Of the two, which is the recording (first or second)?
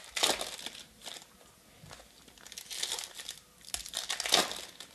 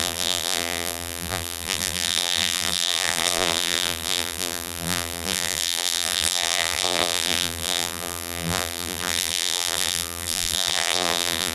first